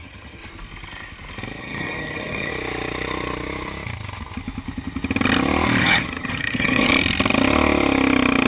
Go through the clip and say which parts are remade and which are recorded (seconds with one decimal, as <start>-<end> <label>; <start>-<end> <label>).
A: 0.0-0.4 remade; 0.4-1.6 recorded; 1.6-2.5 remade; 2.5-5.8 recorded; 5.8-6.9 remade; 6.9-8.5 recorded